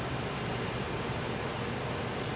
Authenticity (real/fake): real